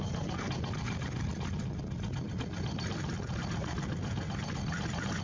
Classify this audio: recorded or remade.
recorded